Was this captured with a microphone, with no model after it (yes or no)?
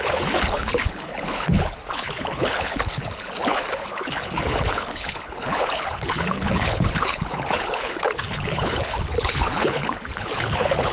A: no